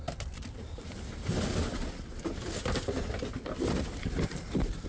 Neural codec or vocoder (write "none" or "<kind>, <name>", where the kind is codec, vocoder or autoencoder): vocoder, BigVGAN v2